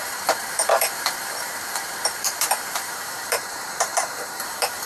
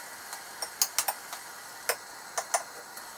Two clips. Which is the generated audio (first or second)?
first